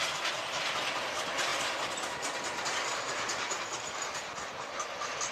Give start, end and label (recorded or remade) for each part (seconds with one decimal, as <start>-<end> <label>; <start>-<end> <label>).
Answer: 0.0-5.3 recorded